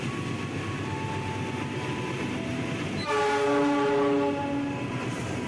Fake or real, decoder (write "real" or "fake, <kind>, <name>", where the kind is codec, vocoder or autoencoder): real